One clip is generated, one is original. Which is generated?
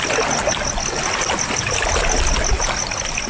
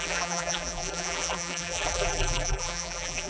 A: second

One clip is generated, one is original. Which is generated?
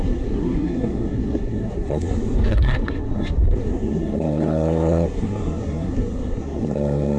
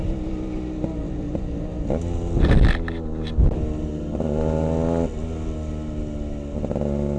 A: first